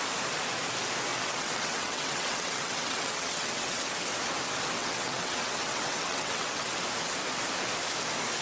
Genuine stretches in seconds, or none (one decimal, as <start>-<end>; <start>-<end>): 0.0-1.1; 3.9-4.8; 6.7-8.4